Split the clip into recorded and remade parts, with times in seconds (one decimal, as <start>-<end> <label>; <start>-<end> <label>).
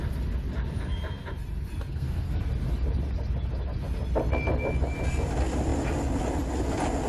0.0-1.9 recorded; 1.9-2.4 remade; 2.4-7.1 recorded